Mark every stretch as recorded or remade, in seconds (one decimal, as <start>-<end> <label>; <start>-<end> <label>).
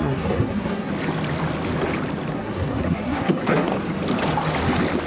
0.0-0.9 remade; 0.9-2.3 recorded; 2.3-3.7 remade; 3.7-5.1 recorded